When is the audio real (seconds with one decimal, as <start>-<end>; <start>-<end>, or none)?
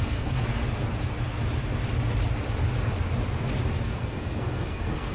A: 0.6-3.7